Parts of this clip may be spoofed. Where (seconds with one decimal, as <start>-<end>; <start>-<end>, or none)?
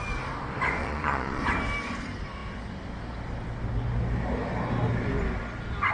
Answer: 0.8-1.4